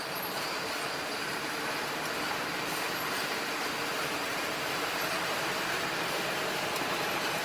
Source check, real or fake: fake